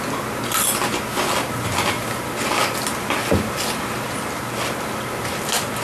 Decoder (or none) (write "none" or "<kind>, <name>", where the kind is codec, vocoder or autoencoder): none